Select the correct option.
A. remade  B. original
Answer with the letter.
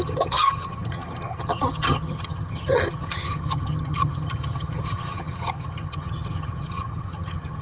A